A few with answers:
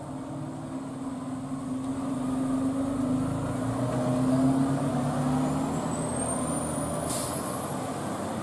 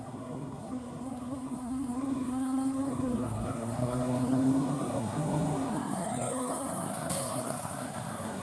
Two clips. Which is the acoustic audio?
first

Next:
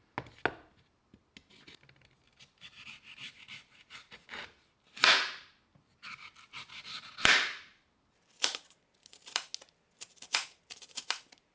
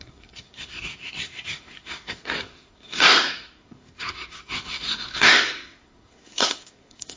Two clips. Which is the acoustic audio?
first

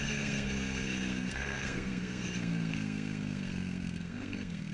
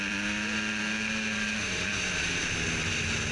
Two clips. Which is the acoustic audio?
second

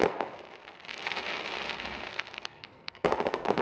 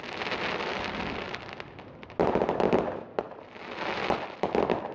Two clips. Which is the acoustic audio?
second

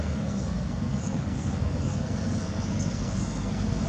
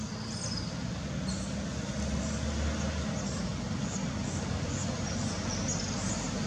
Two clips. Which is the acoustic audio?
second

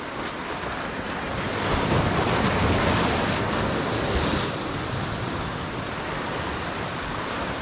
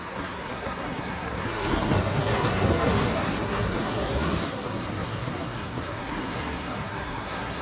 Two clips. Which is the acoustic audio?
first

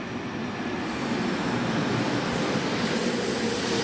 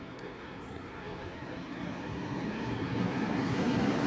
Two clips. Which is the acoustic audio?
first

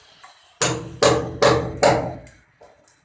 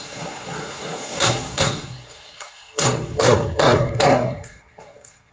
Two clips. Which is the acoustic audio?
first